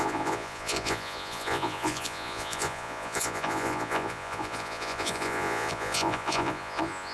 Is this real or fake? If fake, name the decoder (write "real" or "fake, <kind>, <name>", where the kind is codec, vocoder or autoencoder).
fake, vocoder, Vocos